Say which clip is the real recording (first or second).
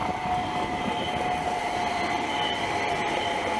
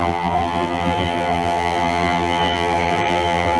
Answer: first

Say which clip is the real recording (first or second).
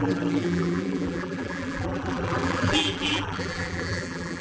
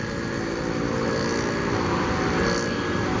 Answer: second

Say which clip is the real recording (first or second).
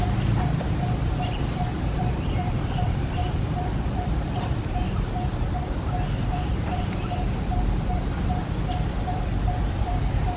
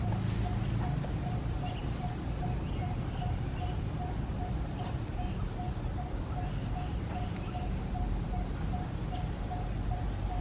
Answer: second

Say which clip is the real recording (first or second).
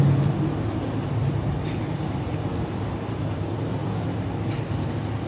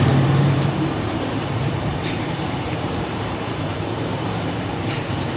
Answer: first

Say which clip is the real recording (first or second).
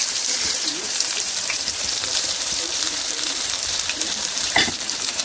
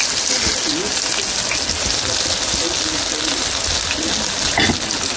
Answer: second